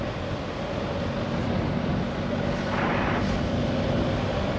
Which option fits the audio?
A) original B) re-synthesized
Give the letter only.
A